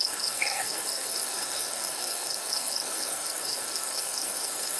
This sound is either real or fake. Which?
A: fake